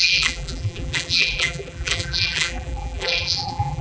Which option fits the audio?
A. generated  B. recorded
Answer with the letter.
A